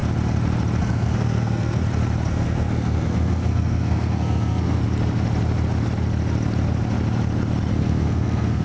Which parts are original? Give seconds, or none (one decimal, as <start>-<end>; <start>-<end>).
0.0-0.8; 1.8-2.3; 4.8-7.7